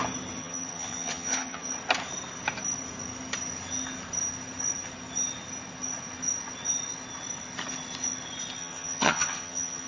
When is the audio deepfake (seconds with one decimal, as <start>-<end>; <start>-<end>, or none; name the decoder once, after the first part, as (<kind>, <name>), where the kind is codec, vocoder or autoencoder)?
0.4-1.6 (vocoder, HiFi-GAN); 8.6-9.9